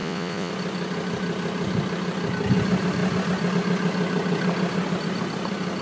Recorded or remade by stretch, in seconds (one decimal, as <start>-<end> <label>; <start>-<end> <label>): 0.0-0.5 remade; 0.5-5.8 recorded